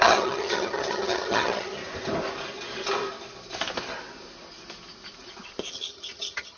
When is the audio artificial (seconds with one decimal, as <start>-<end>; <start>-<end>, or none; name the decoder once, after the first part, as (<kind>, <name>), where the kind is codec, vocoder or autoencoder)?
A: 0.0-1.8 (vocoder, HiFi-GAN); 5.7-6.6